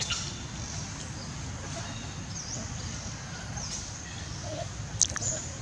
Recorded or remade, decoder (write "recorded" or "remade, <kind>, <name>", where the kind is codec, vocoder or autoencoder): recorded